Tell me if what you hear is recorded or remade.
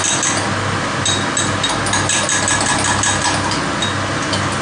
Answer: recorded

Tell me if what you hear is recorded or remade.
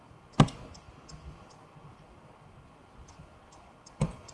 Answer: recorded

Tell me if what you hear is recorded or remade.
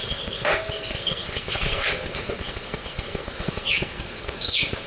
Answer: remade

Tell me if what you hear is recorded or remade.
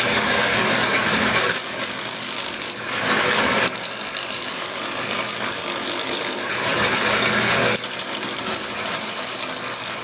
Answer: remade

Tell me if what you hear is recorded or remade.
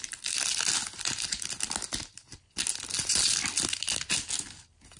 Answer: recorded